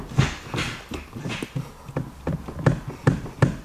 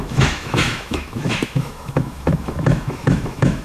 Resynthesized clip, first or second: second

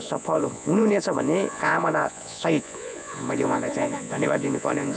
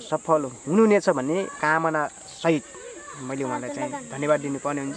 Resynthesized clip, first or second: first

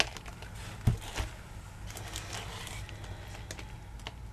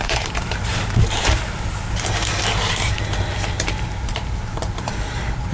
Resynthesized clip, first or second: second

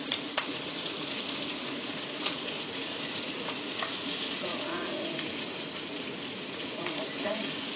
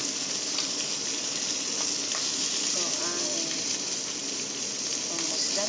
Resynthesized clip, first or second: first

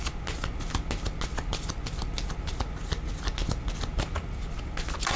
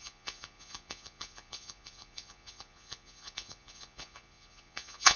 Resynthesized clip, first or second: second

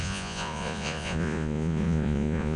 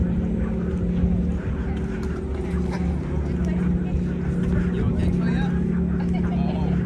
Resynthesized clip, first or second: first